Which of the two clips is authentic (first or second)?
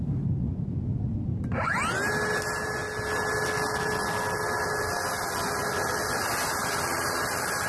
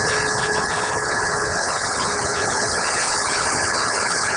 first